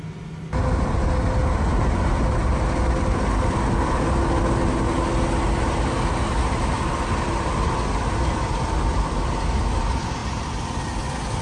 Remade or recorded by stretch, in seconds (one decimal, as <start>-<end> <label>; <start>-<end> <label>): 0.0-11.4 recorded